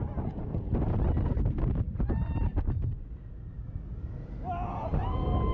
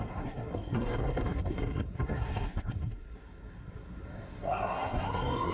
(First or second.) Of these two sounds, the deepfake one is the second